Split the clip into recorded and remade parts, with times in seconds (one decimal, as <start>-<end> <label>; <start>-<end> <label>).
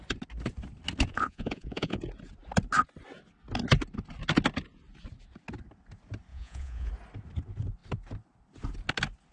0.0-1.1 recorded; 1.1-2.0 remade; 2.0-6.3 recorded; 6.3-6.9 remade; 6.9-9.3 recorded